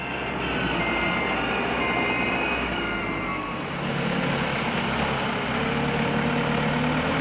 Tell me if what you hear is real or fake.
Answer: real